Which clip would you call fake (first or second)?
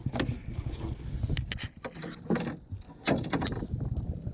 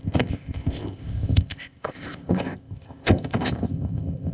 second